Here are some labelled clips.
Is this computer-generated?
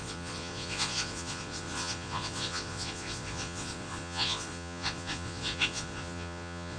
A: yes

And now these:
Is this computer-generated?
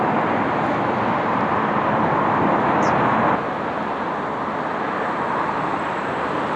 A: no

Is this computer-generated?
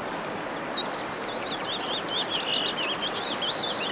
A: no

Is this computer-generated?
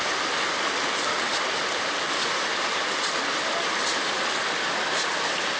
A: no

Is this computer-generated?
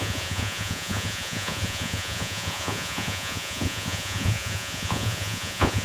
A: yes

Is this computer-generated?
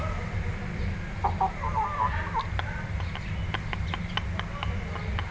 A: no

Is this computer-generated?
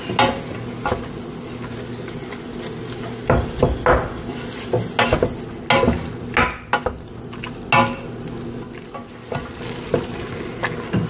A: no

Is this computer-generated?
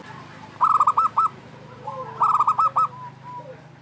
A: no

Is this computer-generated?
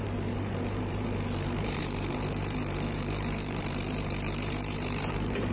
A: yes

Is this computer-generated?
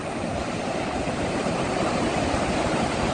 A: yes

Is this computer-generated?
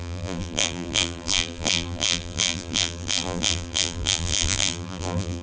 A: yes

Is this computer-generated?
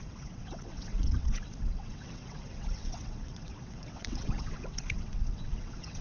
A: yes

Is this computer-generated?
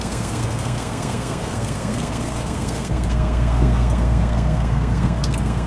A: yes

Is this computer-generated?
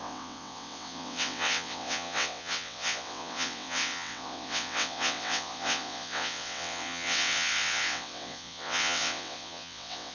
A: yes